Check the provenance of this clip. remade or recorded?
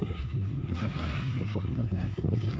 remade